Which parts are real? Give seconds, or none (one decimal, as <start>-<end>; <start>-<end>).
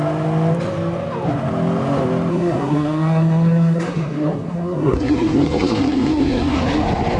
0.0-2.3; 6.6-7.2